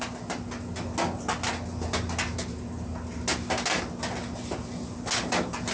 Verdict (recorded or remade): recorded